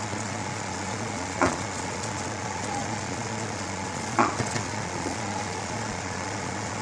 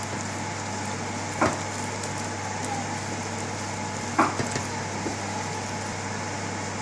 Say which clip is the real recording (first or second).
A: second